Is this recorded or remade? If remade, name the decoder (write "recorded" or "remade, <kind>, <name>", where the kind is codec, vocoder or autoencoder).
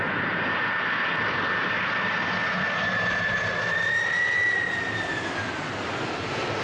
recorded